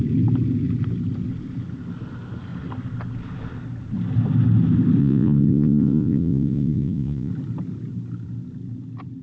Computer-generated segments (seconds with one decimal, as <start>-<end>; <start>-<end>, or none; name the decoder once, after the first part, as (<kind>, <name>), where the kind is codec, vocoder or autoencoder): 5.0-7.3 (vocoder, Vocos)